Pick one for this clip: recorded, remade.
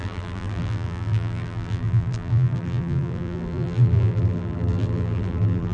remade